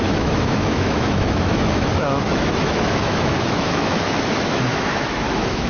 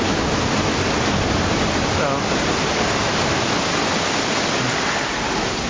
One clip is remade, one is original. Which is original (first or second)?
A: second